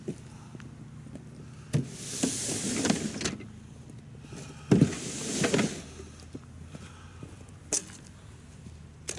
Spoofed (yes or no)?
no